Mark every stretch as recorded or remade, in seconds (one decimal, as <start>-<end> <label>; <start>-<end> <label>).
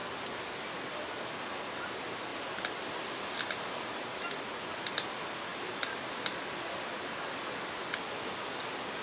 0.0-9.0 recorded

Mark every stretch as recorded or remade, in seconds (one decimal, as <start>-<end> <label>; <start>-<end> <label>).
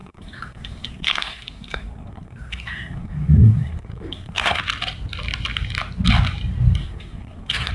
0.0-4.6 remade; 4.6-6.8 recorded; 6.8-7.7 remade